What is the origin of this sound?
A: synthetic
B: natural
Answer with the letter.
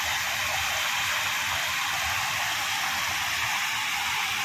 B